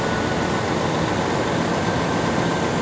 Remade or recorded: recorded